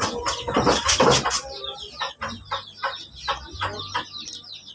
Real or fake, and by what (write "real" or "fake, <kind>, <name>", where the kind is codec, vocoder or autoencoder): real